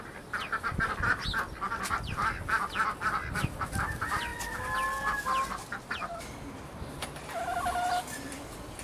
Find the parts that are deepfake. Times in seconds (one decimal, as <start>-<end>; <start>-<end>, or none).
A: none

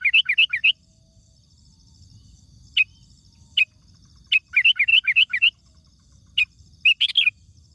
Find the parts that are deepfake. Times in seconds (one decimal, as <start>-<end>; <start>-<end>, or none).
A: 4.9-5.7

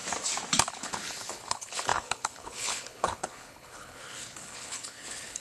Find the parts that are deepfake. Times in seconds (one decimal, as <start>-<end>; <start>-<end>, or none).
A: 0.7-5.4

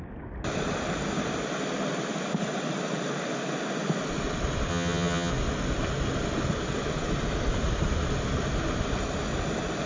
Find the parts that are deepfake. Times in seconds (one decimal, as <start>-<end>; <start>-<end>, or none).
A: 4.7-5.3

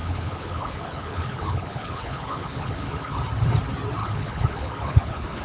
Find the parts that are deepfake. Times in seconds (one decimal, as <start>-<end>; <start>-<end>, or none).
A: 0.0-3.2; 4.0-5.4

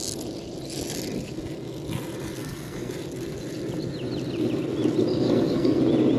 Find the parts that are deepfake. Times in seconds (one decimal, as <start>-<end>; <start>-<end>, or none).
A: 2.4-2.9; 5.1-5.8